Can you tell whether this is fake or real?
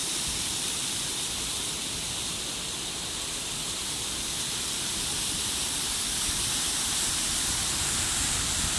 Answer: fake